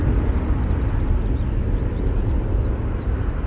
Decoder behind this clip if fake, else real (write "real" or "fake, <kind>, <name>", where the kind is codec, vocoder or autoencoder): real